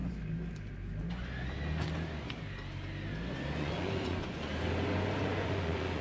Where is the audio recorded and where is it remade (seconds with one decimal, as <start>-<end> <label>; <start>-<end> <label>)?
0.0-3.6 recorded; 3.6-4.5 remade; 4.5-5.2 recorded; 5.2-6.0 remade

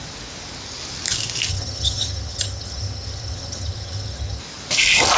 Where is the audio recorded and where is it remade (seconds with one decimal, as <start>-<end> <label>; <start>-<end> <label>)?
0.0-1.5 recorded; 1.5-4.4 remade; 4.4-5.2 recorded